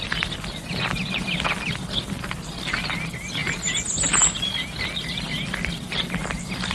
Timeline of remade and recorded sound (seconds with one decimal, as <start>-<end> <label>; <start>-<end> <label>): 0.0-6.7 recorded